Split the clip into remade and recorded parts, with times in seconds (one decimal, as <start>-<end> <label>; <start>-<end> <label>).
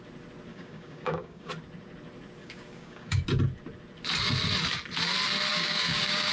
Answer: 0.0-0.5 recorded; 0.5-1.5 remade; 1.5-2.4 recorded; 2.4-3.2 remade; 3.2-5.5 recorded; 5.5-6.3 remade